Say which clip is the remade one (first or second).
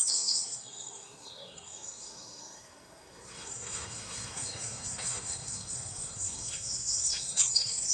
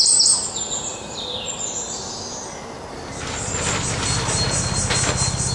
first